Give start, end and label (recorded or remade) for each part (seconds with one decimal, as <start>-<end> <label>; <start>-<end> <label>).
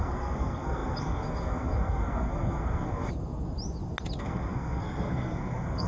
0.0-3.1 remade; 3.1-4.2 recorded; 4.2-5.9 remade